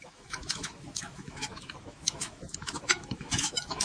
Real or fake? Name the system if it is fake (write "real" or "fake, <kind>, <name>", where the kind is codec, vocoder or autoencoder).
fake, autoencoder, DAC-VAE